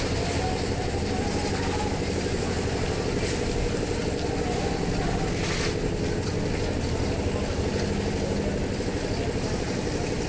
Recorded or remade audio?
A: recorded